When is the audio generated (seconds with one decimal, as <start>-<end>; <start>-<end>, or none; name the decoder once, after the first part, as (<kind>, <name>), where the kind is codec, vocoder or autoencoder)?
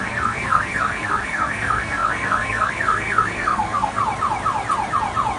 0.0-4.0 (codec, SNAC)